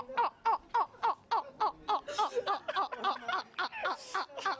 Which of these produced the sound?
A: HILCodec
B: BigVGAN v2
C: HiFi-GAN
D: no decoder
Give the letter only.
D